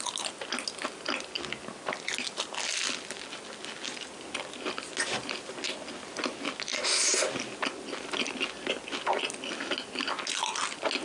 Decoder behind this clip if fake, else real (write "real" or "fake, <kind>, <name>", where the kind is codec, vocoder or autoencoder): real